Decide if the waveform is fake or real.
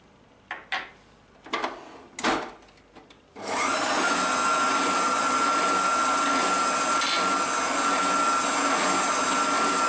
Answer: real